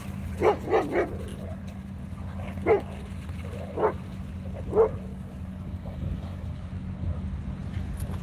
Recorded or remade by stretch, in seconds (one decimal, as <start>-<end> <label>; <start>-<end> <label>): 0.0-5.1 recorded; 5.1-6.7 remade; 6.7-8.2 recorded